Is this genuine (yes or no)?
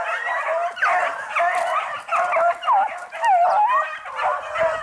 yes